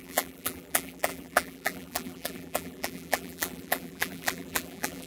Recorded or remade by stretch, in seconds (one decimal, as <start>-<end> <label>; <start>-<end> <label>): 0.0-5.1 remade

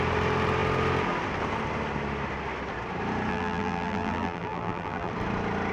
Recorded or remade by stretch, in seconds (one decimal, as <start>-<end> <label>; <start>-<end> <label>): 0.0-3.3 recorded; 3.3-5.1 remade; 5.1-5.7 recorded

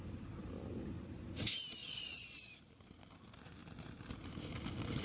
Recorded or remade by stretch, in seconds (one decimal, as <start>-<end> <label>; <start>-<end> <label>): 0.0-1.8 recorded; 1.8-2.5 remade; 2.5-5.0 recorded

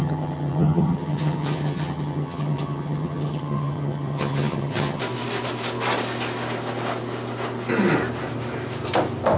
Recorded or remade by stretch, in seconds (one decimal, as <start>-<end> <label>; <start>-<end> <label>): 0.0-5.0 remade; 5.0-9.4 recorded

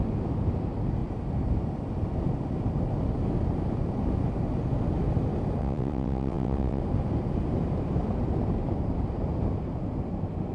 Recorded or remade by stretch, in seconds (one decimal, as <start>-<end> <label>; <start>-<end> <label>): 0.0-5.6 recorded; 5.6-6.8 remade; 6.8-10.5 recorded

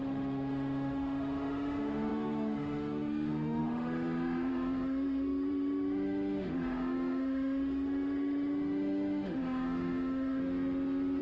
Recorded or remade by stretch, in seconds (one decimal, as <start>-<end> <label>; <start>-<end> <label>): 0.0-10.4 remade; 10.4-11.2 recorded